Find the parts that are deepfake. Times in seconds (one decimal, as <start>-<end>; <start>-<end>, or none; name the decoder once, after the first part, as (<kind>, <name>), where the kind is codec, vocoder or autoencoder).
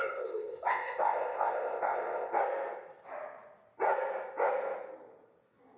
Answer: 0.0-2.4 (codec, ZipCodec)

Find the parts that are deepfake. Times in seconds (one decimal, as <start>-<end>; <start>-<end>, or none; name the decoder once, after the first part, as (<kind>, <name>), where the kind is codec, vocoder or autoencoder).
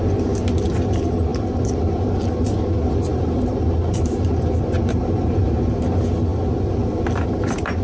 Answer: 3.1-5.7 (vocoder, BigVGAN v2)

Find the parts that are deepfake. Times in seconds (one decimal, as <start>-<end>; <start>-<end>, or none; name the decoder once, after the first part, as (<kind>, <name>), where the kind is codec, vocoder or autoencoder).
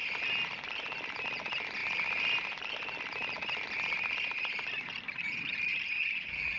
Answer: none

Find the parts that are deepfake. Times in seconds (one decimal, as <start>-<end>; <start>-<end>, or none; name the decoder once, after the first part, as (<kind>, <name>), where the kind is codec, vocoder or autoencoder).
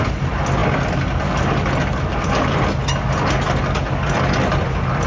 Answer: none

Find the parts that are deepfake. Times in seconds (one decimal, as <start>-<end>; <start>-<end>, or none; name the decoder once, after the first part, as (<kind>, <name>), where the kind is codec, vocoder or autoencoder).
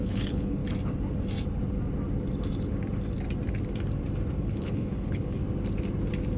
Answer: 0.0-0.6 (codec, HILCodec); 4.4-5.4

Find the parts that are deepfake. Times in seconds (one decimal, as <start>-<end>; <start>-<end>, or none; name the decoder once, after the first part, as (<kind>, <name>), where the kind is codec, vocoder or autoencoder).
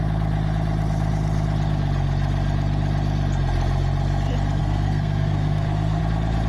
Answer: 4.6-6.0 (codec, SNAC)